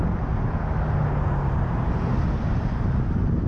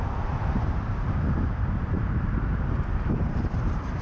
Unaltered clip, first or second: first